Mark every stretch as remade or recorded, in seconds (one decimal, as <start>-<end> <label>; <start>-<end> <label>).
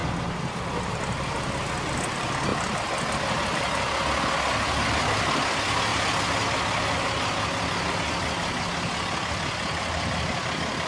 0.0-10.9 recorded